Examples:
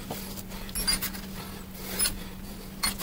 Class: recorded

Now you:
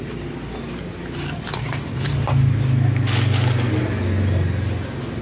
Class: recorded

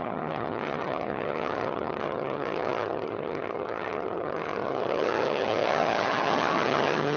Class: remade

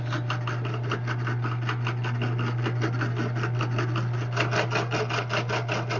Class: recorded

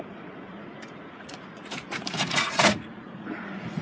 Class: remade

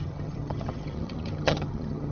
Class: remade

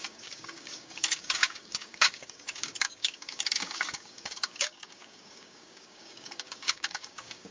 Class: remade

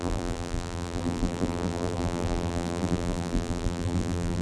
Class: remade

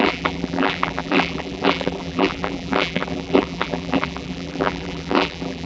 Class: remade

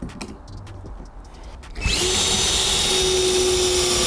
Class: recorded